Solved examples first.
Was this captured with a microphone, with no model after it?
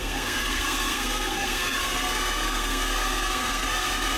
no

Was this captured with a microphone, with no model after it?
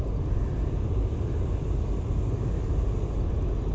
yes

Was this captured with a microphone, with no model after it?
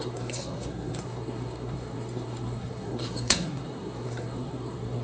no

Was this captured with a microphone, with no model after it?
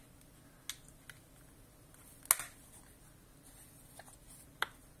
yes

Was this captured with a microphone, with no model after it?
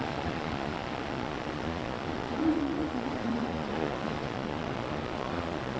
no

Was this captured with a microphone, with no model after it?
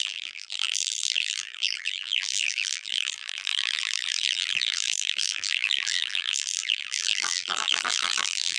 no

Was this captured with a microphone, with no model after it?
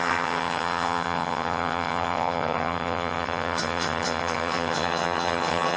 no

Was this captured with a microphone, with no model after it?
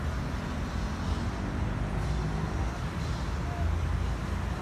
yes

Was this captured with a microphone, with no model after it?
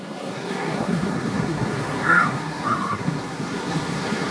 no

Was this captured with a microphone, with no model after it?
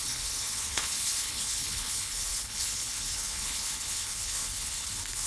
no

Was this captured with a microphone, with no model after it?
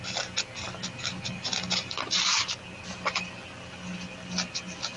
yes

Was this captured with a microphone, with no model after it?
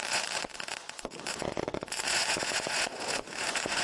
no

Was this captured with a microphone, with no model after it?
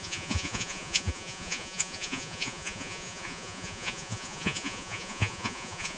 no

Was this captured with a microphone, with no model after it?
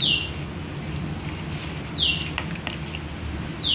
yes